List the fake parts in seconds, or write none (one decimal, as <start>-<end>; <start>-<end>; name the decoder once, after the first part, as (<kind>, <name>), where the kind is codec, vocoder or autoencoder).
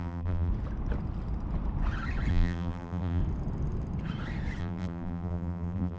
0.0-0.5 (vocoder, BigVGAN v2); 2.3-3.2; 4.6-6.0